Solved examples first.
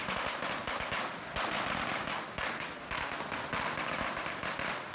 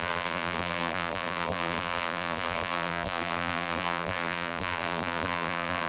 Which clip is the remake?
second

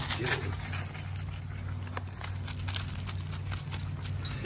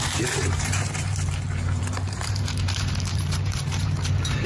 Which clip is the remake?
second